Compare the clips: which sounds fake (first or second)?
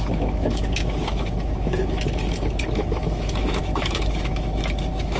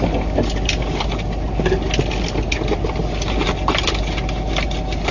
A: first